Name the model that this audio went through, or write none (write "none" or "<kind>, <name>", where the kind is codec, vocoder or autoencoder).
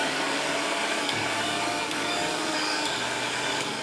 codec, DAC